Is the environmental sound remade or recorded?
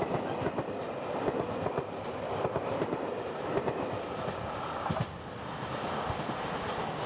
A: recorded